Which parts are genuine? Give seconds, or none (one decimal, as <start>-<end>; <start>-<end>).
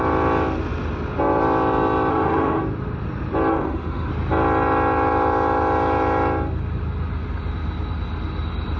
0.0-2.1; 2.6-3.5; 4.1-8.8